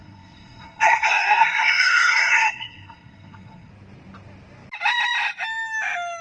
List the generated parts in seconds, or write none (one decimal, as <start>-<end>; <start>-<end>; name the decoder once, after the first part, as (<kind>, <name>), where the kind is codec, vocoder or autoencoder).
0.0-3.7 (codec, SNAC)